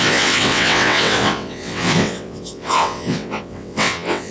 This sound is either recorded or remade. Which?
remade